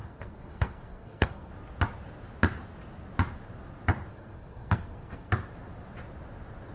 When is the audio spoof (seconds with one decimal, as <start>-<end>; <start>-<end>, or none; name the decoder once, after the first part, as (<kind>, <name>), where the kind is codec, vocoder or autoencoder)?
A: 0.0-1.5 (codec, SNAC); 4.1-5.3